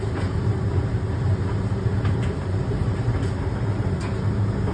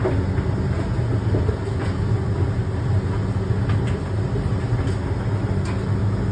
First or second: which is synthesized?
first